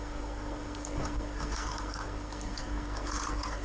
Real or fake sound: fake